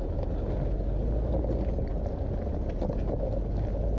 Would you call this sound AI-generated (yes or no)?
no